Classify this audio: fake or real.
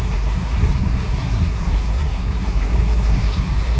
fake